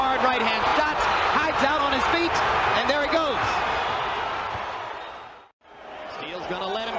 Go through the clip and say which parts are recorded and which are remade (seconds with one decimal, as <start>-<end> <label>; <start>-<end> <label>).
0.0-7.0 recorded